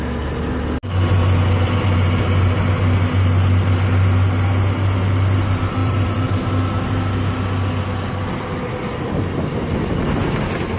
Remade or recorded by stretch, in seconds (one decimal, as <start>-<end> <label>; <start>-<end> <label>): 0.0-5.8 recorded; 5.8-6.3 remade; 6.3-10.8 recorded